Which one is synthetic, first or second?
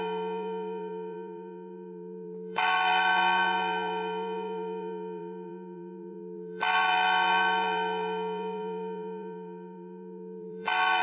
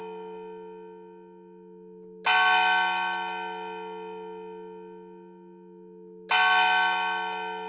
first